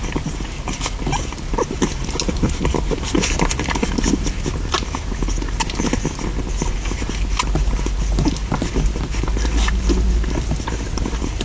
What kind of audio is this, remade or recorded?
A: recorded